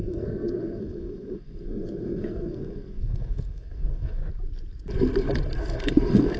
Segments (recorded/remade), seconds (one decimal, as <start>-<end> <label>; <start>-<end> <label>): 0.0-4.2 remade; 4.2-5.6 recorded; 5.6-6.4 remade